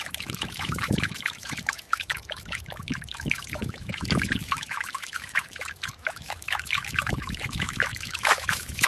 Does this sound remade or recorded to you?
remade